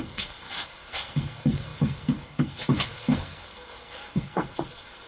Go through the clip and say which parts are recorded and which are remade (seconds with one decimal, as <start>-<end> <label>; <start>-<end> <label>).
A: 0.0-5.1 remade

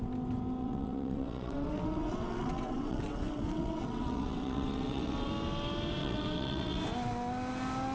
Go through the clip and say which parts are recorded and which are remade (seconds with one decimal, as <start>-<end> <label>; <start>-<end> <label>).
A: 0.0-0.6 recorded; 0.6-5.3 remade; 5.3-6.0 recorded; 6.0-6.8 remade; 6.8-7.9 recorded

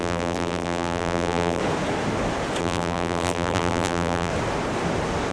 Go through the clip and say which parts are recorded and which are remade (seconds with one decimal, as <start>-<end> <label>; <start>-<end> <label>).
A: 0.0-1.6 remade; 1.6-2.6 recorded; 2.6-4.3 remade; 4.3-5.3 recorded

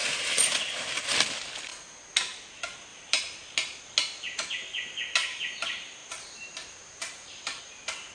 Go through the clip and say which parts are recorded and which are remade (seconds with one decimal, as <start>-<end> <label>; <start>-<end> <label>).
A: 0.0-0.6 remade; 0.6-2.9 recorded; 2.9-3.8 remade; 3.8-6.0 recorded; 6.0-7.6 remade; 7.6-8.1 recorded

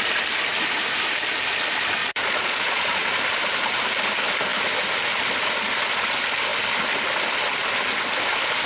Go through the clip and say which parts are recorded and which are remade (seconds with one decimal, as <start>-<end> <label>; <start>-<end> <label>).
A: 0.0-2.0 recorded; 2.0-3.2 remade; 3.2-8.7 recorded

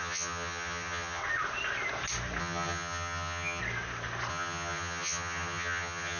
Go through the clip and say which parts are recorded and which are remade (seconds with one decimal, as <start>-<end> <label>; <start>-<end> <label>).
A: 0.0-1.2 remade; 1.2-2.4 recorded; 2.4-3.6 remade; 3.6-4.3 recorded; 4.3-6.2 remade